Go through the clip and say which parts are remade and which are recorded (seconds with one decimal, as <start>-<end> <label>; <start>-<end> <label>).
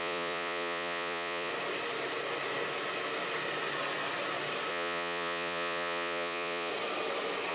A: 0.0-1.5 remade; 1.5-4.7 recorded; 4.7-6.7 remade; 6.7-7.5 recorded